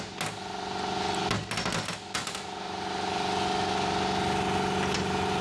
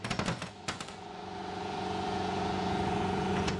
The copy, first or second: second